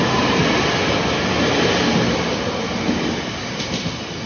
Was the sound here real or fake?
real